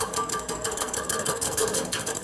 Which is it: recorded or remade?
remade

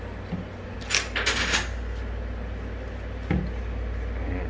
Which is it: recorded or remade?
recorded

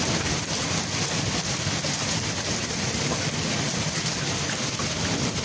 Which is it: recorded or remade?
recorded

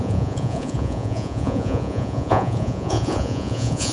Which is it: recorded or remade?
remade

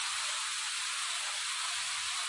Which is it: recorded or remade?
recorded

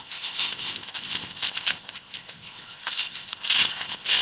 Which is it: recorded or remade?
remade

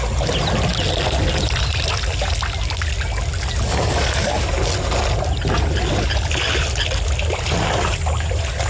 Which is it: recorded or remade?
recorded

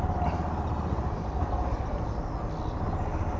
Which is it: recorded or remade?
recorded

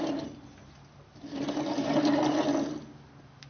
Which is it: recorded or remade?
recorded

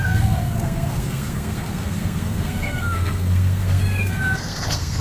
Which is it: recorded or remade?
remade